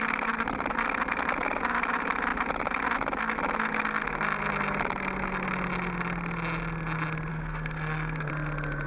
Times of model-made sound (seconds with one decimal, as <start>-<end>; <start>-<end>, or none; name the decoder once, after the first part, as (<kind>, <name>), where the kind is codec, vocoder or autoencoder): 7.3-8.3 (codec, SNAC)